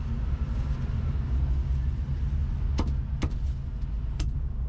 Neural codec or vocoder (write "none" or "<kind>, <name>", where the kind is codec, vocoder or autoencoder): none